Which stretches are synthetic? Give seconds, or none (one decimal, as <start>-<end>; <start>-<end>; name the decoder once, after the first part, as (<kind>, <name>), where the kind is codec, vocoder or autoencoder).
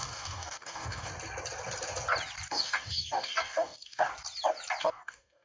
0.0-1.1 (codec, DAC); 2.5-4.1; 4.8-5.4